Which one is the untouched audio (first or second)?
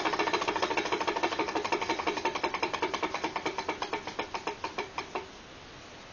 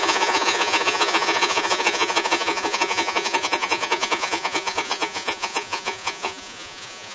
first